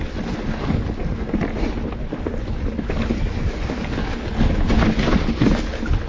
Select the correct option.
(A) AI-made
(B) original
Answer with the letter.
B